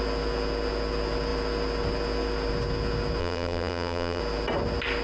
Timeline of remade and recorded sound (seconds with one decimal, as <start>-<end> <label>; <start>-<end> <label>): 0.0-3.2 recorded; 3.2-4.2 remade; 4.2-5.0 recorded